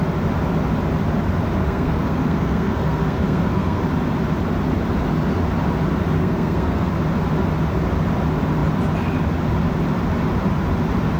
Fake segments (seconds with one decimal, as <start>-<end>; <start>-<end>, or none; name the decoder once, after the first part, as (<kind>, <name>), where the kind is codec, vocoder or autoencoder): 1.6-3.8 (codec, SNAC); 6.2-6.9